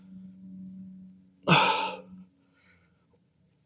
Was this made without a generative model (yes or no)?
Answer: yes